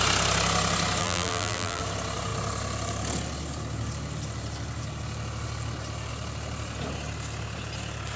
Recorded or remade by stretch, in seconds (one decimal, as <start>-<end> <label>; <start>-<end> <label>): 0.0-1.0 recorded; 1.0-1.8 remade; 1.8-8.2 recorded